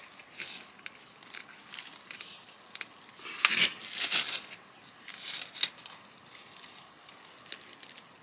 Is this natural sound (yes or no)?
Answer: yes